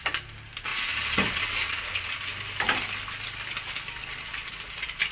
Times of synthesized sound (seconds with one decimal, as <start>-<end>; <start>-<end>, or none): none